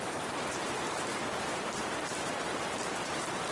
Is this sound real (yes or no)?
no